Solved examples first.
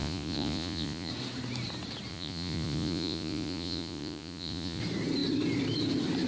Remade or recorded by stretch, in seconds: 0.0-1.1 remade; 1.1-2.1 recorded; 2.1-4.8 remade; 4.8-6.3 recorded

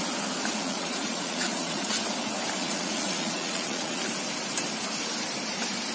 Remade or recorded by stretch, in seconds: 0.0-0.5 recorded; 0.5-1.9 remade; 1.9-2.6 recorded; 2.6-4.0 remade; 4.0-5.9 recorded

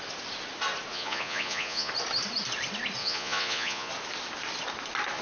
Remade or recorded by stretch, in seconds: 0.0-0.9 recorded; 0.9-1.9 remade; 1.9-3.0 recorded; 3.0-3.9 remade; 3.9-5.2 recorded

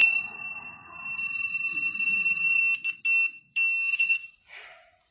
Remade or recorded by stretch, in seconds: 0.0-2.6 remade; 2.6-3.9 recorded; 3.9-5.1 remade

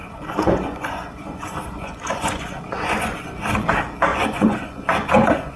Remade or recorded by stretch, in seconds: 0.0-3.4 remade; 3.4-4.1 recorded; 4.1-5.6 remade

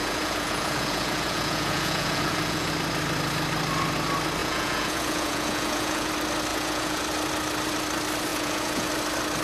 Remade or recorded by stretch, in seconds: 0.0-2.7 remade; 2.7-4.4 recorded; 4.4-6.1 remade; 6.1-6.5 recorded; 6.5-7.0 remade; 7.0-8.3 recorded; 8.3-8.9 remade; 8.9-9.4 recorded

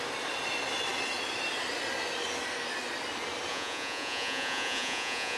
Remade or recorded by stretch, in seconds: 0.0-3.5 recorded; 3.5-5.4 remade